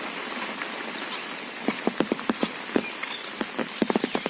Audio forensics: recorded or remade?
recorded